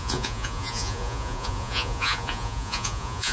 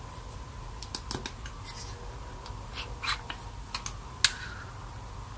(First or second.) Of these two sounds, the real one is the second